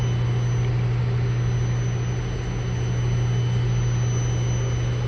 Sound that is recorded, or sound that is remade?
recorded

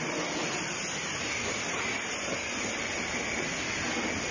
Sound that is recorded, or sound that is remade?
recorded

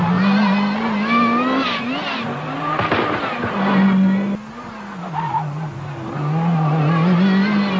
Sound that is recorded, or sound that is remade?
recorded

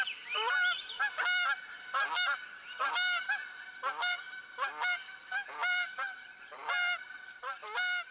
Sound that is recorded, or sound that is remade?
recorded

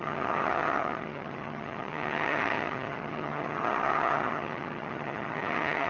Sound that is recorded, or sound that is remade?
remade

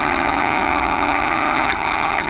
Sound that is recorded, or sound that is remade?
remade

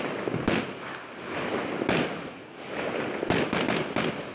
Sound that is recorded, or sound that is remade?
recorded